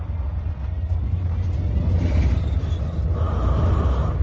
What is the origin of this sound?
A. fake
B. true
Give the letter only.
B